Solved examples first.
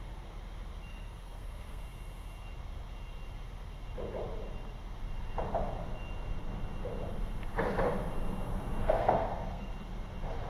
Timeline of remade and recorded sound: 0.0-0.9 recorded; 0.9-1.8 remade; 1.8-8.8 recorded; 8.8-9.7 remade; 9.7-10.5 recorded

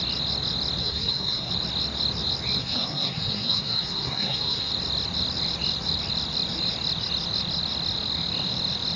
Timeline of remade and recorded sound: 0.0-0.8 recorded; 0.8-1.5 remade; 1.5-2.6 recorded; 2.6-4.7 remade; 4.7-9.0 recorded

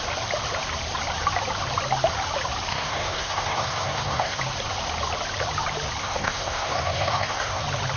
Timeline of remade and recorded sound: 0.0-2.7 recorded; 2.7-4.4 remade; 4.4-6.0 recorded; 6.0-7.6 remade; 7.6-8.0 recorded